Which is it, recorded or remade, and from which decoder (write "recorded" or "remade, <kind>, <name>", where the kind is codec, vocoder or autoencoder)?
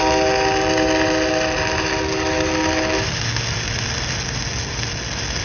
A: recorded